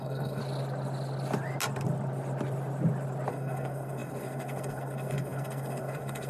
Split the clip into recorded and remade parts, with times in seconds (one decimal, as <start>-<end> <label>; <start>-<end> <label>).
0.0-0.4 remade; 0.4-3.3 recorded; 3.3-6.3 remade